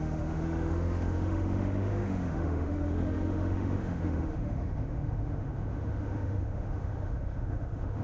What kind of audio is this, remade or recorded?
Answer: remade